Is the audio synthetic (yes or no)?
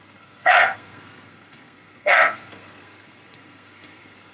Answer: yes